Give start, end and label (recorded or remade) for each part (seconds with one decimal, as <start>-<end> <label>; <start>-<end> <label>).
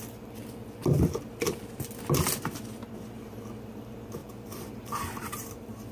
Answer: 0.0-4.2 recorded; 4.2-5.9 remade